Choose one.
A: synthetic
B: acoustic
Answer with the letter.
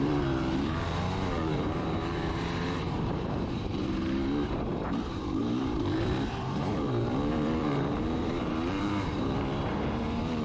A